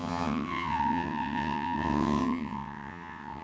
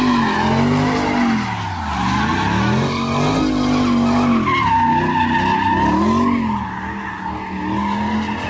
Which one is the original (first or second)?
second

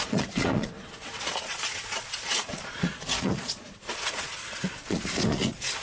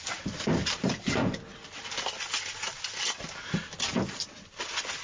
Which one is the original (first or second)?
second